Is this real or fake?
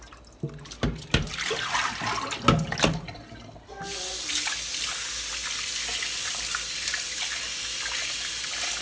real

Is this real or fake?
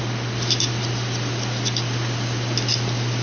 real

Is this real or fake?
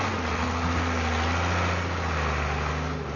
real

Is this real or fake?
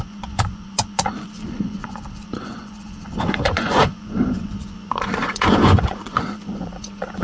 fake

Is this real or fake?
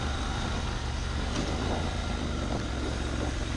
real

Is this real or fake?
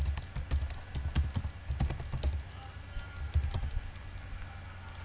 real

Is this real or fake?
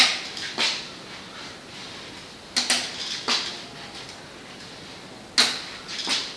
real